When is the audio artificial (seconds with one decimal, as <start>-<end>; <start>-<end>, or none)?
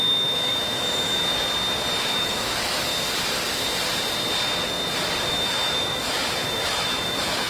0.0-1.3; 2.0-2.9; 5.2-7.5